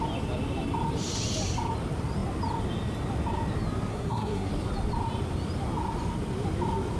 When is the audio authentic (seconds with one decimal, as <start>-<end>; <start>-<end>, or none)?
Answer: 0.0-3.9; 4.5-7.0